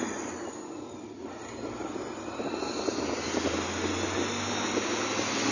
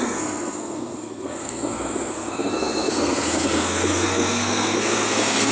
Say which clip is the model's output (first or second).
second